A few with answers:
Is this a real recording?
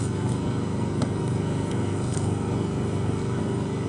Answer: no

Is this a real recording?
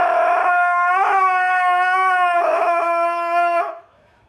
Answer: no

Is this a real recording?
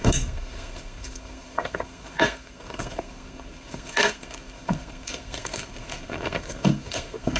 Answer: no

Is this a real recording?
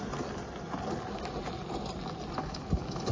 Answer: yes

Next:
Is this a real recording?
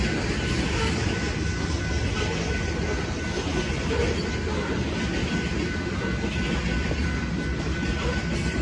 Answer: yes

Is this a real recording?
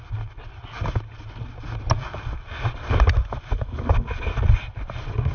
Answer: yes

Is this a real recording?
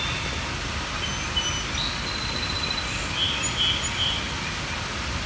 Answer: yes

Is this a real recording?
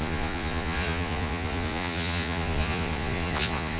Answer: no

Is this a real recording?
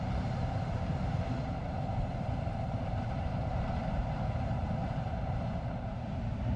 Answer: no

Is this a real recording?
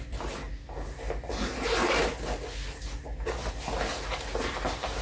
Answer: yes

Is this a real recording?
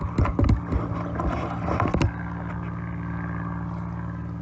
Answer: yes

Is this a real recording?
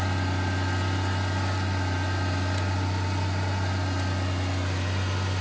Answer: yes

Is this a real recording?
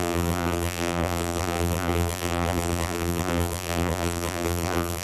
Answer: no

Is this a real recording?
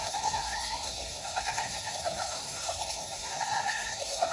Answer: no